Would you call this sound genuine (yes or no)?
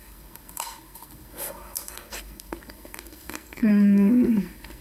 no